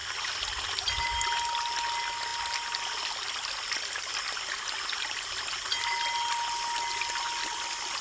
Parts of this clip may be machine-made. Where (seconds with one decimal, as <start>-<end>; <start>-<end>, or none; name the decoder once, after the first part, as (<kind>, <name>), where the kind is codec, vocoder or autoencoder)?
none